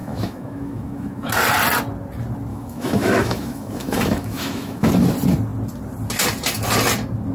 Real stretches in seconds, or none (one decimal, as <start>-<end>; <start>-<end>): 1.3-2.5; 4.9-7.3